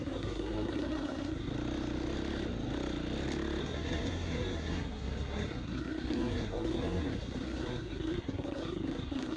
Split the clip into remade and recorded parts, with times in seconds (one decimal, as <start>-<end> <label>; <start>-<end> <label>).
0.0-1.5 remade; 1.5-3.6 recorded; 3.6-9.4 remade